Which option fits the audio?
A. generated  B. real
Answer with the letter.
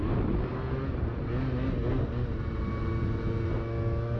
B